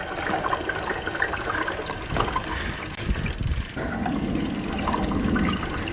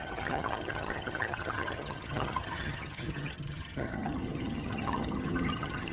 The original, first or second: first